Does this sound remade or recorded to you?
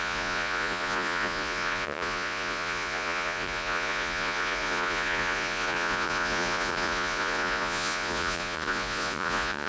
remade